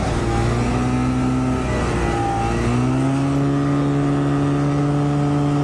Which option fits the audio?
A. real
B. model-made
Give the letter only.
A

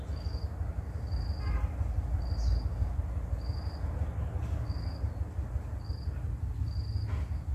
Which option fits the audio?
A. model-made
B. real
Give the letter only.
B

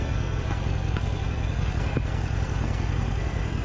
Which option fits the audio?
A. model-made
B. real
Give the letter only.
A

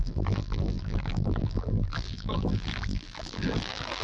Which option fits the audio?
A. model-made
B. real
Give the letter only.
A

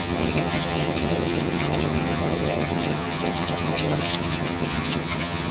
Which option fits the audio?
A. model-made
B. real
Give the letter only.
A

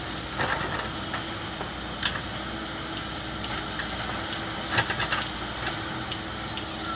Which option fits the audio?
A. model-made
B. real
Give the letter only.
B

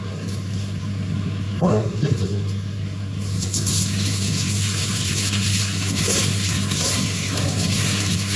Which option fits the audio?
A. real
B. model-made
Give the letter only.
B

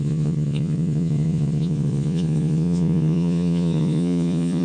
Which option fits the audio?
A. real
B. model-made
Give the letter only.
B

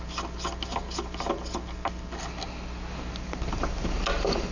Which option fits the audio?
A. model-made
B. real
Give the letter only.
B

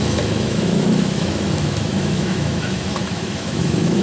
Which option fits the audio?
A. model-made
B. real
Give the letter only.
A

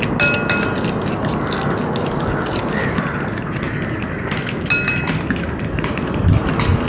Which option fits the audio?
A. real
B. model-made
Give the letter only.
A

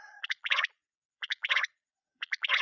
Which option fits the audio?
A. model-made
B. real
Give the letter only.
A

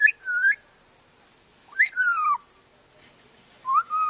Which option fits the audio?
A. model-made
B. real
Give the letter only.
B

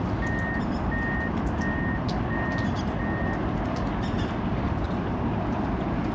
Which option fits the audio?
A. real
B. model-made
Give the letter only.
A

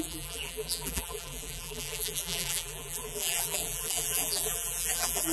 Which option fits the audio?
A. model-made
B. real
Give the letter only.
A